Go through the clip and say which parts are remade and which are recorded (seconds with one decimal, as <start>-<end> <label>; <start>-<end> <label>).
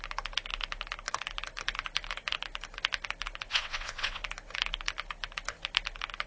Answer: 0.0-3.5 recorded; 3.5-4.2 remade; 4.2-6.3 recorded